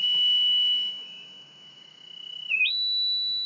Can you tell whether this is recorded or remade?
remade